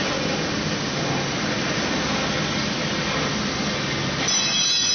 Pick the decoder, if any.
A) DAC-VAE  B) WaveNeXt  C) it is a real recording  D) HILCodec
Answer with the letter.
C